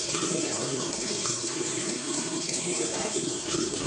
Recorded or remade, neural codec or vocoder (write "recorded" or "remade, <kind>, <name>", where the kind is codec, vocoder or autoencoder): remade, codec, SNAC